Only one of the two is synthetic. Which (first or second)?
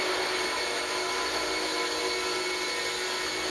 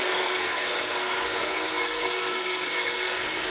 second